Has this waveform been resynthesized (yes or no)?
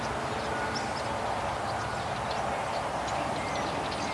no